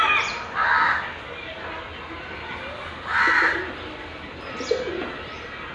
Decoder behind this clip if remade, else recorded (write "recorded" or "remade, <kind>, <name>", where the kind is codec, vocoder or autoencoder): recorded